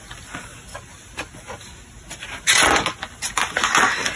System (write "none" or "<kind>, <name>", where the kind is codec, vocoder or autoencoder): none